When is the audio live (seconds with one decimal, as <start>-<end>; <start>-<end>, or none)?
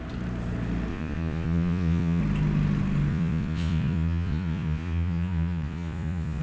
0.0-0.9; 2.2-3.1